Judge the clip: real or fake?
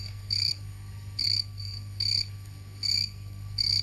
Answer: fake